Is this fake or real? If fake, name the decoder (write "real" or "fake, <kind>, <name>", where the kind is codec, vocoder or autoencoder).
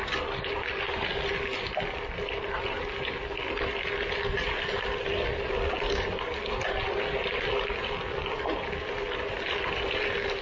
real